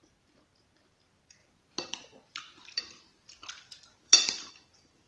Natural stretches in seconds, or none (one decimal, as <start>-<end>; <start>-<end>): 0.0-1.4; 4.5-5.1